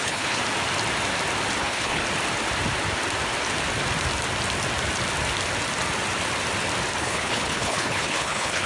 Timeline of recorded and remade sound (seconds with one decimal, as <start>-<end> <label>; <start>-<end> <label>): 0.0-0.4 remade; 0.4-1.6 recorded; 1.6-2.0 remade; 2.0-7.0 recorded; 7.0-8.7 remade